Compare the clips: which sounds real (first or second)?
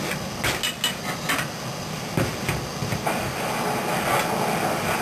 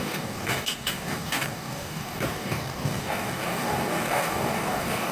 first